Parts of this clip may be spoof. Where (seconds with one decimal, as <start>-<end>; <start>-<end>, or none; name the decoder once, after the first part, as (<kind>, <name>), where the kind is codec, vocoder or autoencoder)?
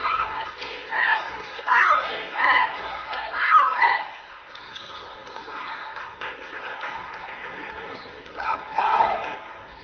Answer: 0.0-9.8 (codec, SNAC)